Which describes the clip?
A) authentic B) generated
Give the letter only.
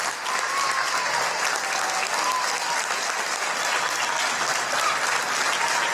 A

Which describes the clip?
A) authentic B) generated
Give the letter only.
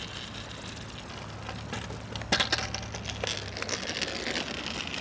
A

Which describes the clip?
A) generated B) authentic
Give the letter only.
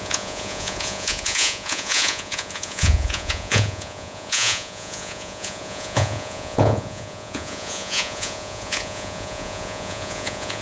A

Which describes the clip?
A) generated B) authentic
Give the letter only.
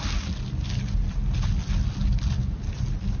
B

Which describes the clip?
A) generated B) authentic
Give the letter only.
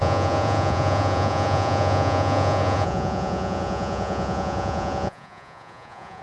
A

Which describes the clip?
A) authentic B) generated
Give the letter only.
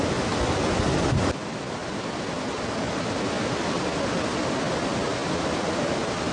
A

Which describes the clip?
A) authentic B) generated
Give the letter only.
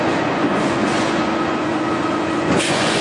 B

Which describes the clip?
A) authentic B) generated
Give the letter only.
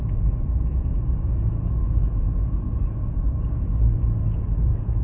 B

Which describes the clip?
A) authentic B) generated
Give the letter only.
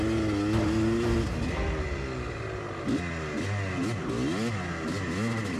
A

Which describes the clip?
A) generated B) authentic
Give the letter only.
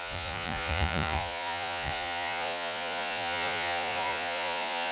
A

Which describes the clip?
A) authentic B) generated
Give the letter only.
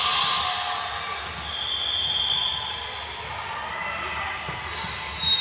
A